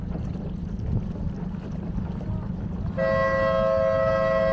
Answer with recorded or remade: recorded